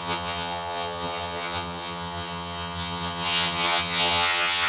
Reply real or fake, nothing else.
fake